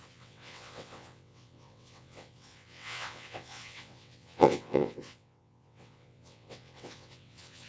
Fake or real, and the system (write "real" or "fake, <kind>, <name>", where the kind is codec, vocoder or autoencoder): fake, vocoder, WaveNeXt